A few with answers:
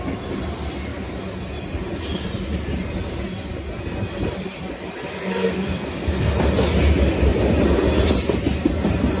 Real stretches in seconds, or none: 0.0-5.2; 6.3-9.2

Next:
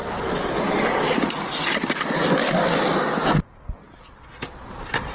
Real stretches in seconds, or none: 0.0-5.1

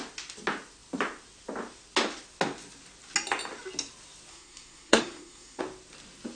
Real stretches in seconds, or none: 0.0-4.3; 5.6-6.4

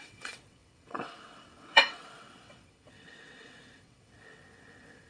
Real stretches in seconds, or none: none

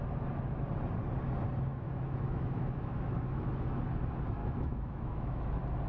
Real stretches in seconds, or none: 0.0-1.7; 3.8-4.4; 5.5-5.9